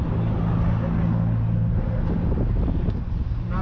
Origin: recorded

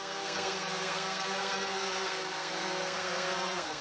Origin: remade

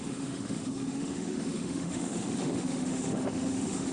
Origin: remade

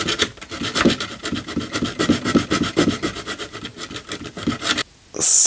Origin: recorded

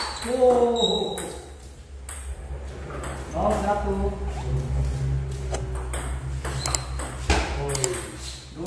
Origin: recorded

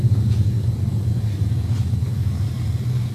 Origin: recorded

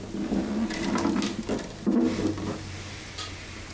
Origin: recorded